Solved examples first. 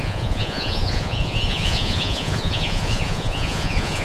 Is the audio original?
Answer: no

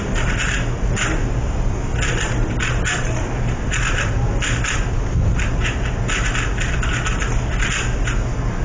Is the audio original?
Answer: yes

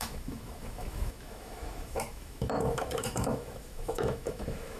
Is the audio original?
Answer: no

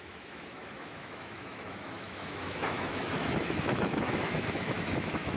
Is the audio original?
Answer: no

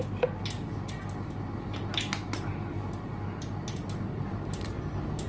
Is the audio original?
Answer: yes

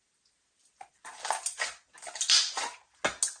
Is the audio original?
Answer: yes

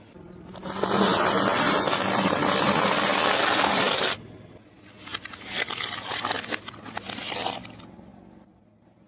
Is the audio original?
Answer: yes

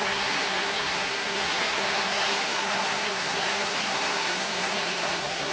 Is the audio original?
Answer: no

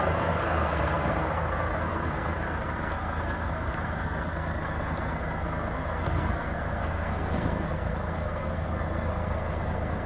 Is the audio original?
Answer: no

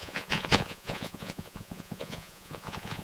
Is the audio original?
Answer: no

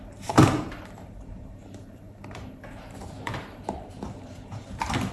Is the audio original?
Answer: no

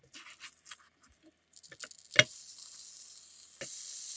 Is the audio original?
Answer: yes